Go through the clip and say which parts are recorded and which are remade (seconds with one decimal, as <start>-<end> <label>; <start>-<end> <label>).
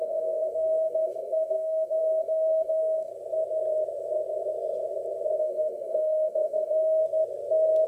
0.0-3.1 remade; 3.1-5.4 recorded; 5.4-7.0 remade; 7.0-7.9 recorded